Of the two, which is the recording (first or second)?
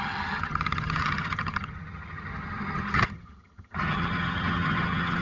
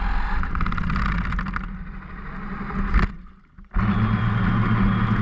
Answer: second